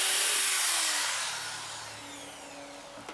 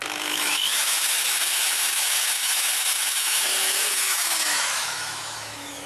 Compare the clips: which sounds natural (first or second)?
first